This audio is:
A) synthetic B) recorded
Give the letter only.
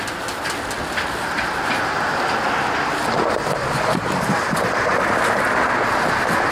B